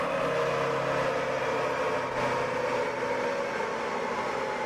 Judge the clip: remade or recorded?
recorded